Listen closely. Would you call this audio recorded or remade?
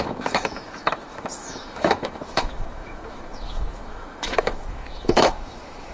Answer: remade